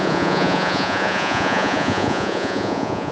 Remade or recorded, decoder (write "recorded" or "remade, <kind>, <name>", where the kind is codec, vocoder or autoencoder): remade, vocoder, Vocos